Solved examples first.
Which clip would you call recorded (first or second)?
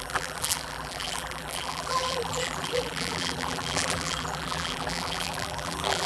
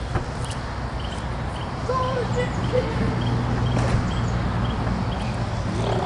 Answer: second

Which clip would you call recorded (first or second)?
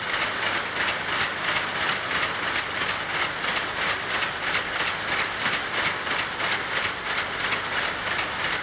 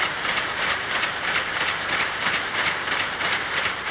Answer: first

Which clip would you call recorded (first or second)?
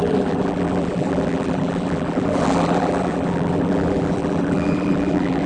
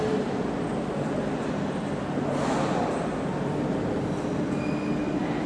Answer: second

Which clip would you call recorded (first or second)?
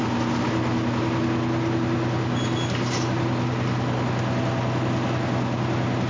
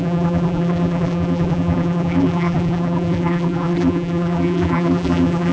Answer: first